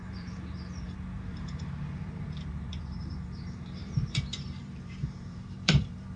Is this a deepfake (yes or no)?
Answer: yes